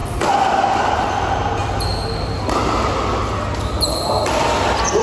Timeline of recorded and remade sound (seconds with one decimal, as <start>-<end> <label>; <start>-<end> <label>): 0.0-5.0 recorded